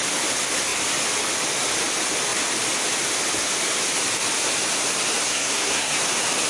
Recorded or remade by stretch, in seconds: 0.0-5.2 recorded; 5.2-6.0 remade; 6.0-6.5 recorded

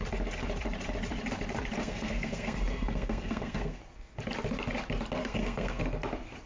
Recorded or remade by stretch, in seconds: 0.0-1.8 recorded; 1.8-3.8 remade; 3.8-5.2 recorded; 5.2-5.8 remade; 5.8-6.5 recorded

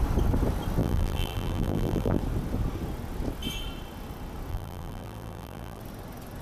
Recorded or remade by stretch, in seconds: 0.0-0.8 recorded; 0.8-2.2 remade; 2.2-4.5 recorded; 4.5-5.8 remade; 5.8-6.4 recorded

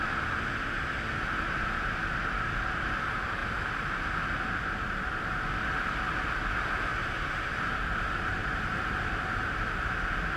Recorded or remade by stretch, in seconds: 0.0-6.9 recorded; 6.9-9.0 remade; 9.0-10.4 recorded